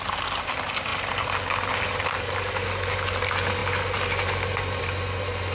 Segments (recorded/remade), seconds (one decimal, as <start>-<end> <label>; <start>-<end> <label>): 0.0-5.5 recorded